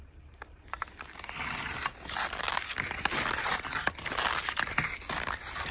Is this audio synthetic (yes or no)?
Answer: no